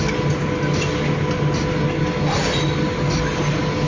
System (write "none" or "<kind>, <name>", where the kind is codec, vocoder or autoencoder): none